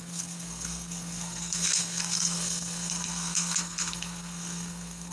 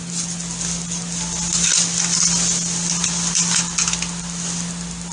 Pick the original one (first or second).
second